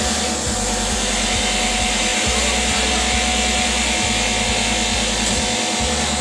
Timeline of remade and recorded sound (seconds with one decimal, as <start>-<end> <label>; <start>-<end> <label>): 0.0-6.2 recorded